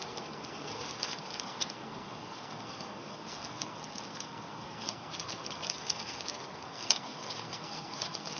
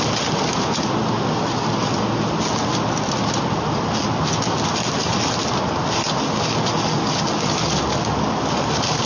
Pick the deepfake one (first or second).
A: first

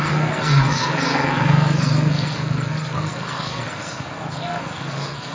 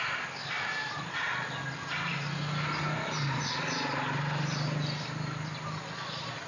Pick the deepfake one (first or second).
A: first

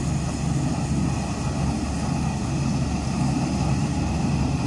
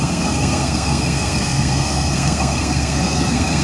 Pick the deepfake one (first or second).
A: second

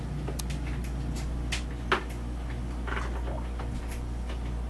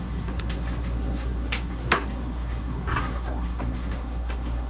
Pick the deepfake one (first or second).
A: second